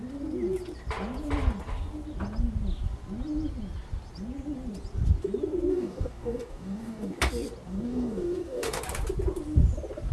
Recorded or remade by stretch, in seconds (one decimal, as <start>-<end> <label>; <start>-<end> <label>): 0.0-5.7 recorded; 5.7-7.2 remade; 7.2-7.7 recorded; 7.7-8.8 remade; 8.8-10.1 recorded